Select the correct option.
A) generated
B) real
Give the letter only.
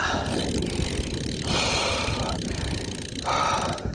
B